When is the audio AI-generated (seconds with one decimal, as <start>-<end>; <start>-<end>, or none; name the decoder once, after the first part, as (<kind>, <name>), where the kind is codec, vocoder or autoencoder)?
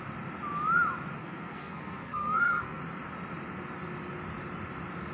1.2-2.8 (codec, SNAC)